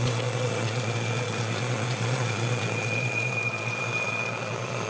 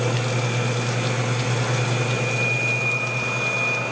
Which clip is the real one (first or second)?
second